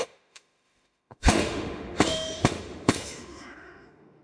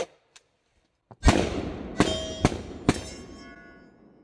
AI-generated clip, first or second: first